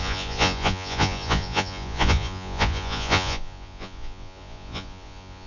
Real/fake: fake